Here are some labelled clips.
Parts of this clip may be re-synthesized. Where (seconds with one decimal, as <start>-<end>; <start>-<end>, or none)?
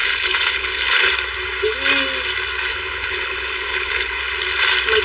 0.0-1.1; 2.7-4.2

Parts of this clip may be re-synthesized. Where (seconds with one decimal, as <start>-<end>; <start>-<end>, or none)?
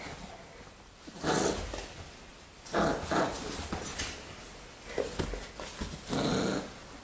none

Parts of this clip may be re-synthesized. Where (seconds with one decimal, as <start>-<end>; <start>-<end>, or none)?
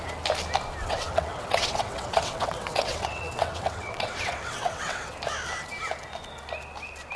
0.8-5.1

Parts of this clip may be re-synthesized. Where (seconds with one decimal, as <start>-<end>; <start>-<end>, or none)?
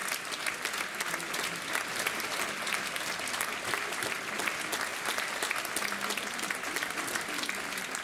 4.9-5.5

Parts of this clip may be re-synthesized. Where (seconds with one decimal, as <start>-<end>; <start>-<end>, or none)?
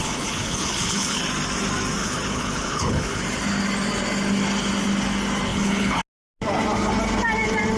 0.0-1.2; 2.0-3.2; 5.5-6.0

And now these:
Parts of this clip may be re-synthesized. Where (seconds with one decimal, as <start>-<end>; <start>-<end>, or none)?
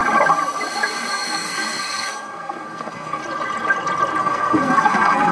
1.1-3.2; 4.2-5.3